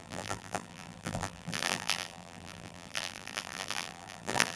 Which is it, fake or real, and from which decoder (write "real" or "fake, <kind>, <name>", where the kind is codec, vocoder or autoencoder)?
fake, vocoder, BigVGAN v2